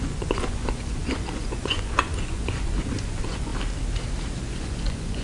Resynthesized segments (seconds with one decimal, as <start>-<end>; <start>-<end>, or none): 0.0-3.5; 4.4-5.2